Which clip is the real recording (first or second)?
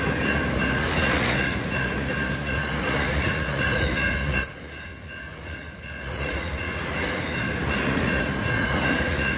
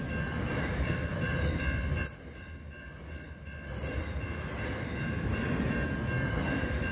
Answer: second